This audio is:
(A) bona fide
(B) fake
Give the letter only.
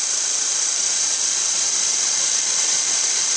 B